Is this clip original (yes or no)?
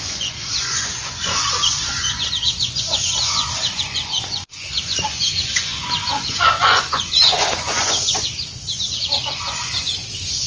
no